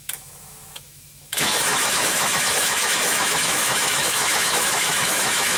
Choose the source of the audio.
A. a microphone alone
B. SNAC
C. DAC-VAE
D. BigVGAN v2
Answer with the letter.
C